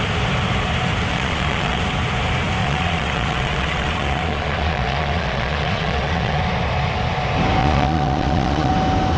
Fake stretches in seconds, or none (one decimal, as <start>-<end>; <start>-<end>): 1.1-1.8; 2.6-6.4; 7.6-8.7